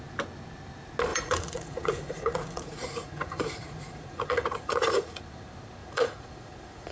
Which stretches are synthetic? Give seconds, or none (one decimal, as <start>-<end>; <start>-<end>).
1.1-5.2; 5.8-6.9